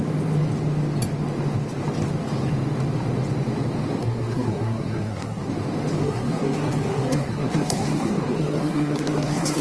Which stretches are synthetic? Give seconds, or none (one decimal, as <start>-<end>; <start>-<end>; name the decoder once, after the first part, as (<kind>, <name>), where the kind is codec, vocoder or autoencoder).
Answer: 4.0-5.5 (codec, SNAC); 6.0-9.6